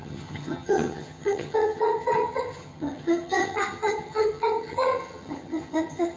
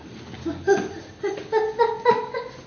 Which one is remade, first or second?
first